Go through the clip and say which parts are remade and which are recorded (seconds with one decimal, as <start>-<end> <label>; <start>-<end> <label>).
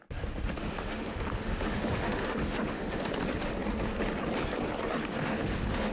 0.0-0.6 recorded; 0.6-3.1 remade; 3.1-5.1 recorded; 5.1-5.9 remade